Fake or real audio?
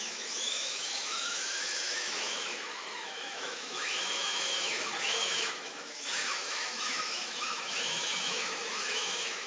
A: fake